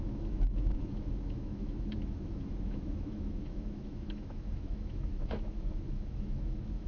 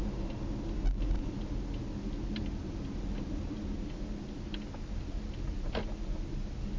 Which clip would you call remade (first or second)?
first